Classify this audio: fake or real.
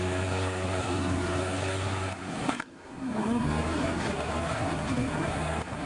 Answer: fake